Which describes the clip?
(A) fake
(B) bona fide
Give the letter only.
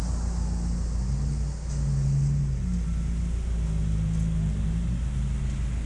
B